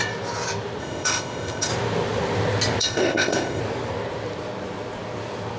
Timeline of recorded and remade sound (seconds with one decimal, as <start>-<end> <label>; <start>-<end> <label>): 0.0-0.8 recorded; 0.8-1.7 remade; 1.7-2.8 recorded; 2.8-3.6 remade; 3.6-5.6 recorded